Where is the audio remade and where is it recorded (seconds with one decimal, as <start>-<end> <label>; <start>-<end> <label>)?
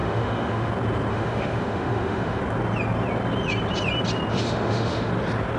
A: 0.0-0.7 remade; 0.7-1.1 recorded; 1.1-2.4 remade; 2.4-4.3 recorded; 4.3-5.1 remade; 5.1-5.6 recorded